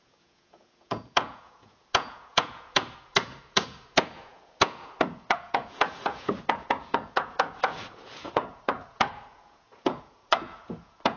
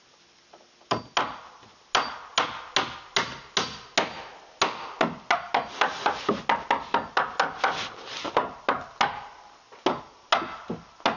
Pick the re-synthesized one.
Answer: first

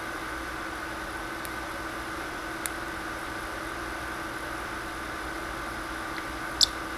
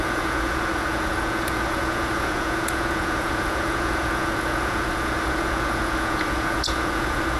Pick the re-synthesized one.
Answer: second